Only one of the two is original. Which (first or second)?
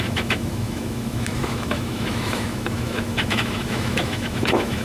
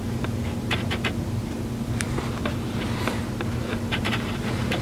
second